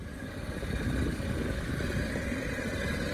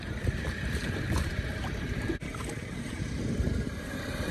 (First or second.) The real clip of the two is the first